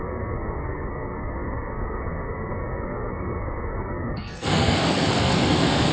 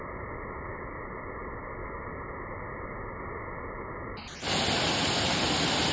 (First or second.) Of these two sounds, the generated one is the first